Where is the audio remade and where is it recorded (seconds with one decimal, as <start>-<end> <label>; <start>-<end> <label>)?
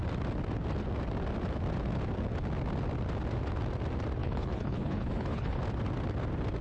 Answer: 0.0-4.2 recorded; 4.2-5.6 remade; 5.6-6.6 recorded